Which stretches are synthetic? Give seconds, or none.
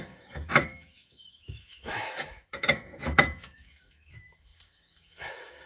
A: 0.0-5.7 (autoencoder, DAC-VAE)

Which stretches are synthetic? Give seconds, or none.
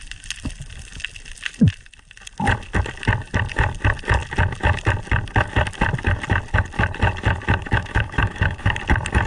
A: 7.6-8.8 (autoencoder, DAC-VAE)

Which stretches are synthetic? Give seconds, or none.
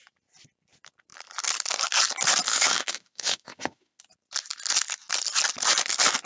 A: 2.5-4.0 (autoencoder, DAC-VAE)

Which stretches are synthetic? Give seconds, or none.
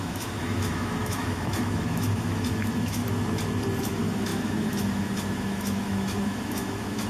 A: 0.0-3.0 (autoencoder, DAC-VAE); 3.8-7.1